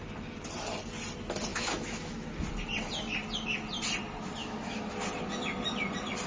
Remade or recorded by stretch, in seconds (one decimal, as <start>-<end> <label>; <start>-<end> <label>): 0.0-1.5 recorded; 1.5-2.3 remade; 2.3-4.4 recorded; 4.4-4.9 remade; 4.9-6.3 recorded